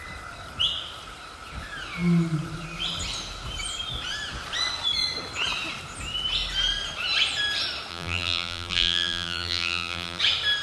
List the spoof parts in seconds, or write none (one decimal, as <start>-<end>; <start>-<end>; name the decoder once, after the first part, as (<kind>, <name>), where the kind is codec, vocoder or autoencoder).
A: 7.9-10.2 (vocoder, BigVGAN v2)